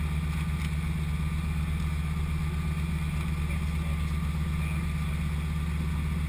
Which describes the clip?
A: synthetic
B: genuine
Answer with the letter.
B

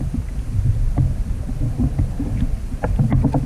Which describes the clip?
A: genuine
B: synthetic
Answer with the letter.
A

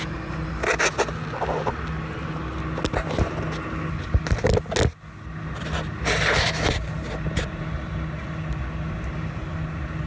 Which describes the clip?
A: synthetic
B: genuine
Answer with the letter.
B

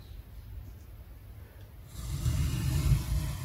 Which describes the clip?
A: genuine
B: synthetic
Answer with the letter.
A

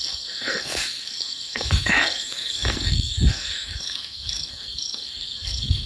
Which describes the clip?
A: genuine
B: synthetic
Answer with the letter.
B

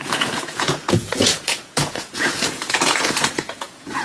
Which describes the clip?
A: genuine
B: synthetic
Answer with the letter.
B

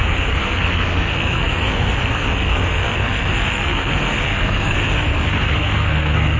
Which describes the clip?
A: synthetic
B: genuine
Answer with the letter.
A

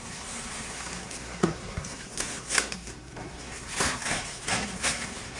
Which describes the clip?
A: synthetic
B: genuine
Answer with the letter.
A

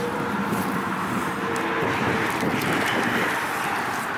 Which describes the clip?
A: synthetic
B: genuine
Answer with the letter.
B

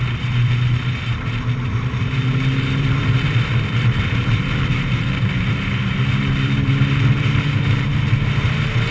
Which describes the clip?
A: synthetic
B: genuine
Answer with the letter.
A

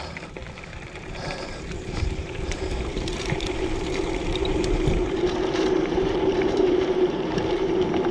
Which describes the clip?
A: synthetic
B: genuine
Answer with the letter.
A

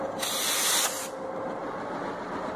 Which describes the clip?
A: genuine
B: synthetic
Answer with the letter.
A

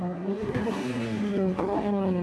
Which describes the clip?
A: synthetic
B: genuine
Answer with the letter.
A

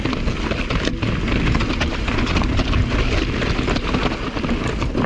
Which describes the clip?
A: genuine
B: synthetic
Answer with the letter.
A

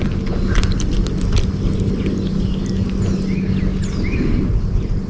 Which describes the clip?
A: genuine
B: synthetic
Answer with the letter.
A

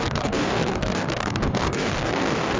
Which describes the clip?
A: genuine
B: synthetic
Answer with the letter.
B